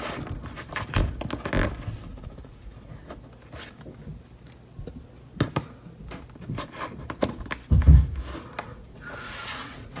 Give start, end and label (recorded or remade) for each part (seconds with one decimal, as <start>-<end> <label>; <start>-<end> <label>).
0.0-2.1 recorded; 2.1-3.1 remade; 3.1-8.7 recorded; 8.7-10.0 remade

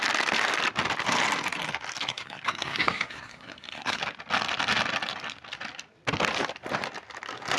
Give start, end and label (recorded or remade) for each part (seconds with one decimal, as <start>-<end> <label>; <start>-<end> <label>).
0.0-2.1 recorded; 2.1-4.0 remade; 4.0-7.6 recorded

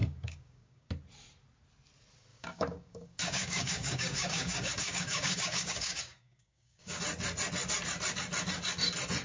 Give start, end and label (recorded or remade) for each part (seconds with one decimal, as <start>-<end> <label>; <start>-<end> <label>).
0.0-0.9 remade; 0.9-2.3 recorded; 2.3-7.0 remade; 7.0-9.2 recorded

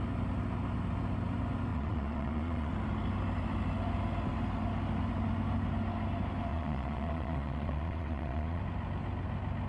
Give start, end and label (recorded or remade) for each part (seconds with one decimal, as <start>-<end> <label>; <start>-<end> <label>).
0.0-1.7 recorded; 1.7-2.7 remade; 2.7-6.5 recorded; 6.5-8.6 remade; 8.6-9.7 recorded

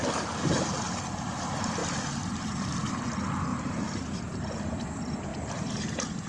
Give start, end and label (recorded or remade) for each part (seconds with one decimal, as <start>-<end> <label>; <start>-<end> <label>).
0.0-3.5 recorded; 3.5-4.2 remade; 4.2-5.3 recorded; 5.3-6.3 remade

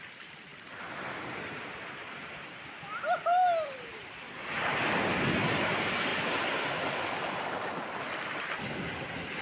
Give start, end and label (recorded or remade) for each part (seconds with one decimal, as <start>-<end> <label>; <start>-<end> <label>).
0.0-0.5 recorded; 0.5-5.2 remade; 5.2-6.1 recorded; 6.1-9.0 remade; 9.0-9.4 recorded

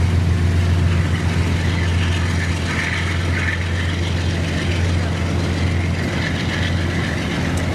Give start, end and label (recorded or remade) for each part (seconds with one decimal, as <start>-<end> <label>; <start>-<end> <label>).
0.0-7.7 recorded